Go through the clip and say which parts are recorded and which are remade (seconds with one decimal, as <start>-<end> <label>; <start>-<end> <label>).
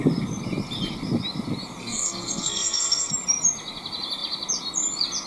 0.0-1.8 recorded; 1.8-3.1 remade; 3.1-5.3 recorded